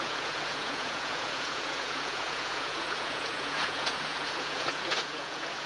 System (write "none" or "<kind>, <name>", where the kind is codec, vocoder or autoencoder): vocoder, Vocos